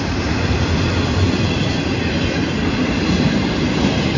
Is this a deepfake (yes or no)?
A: no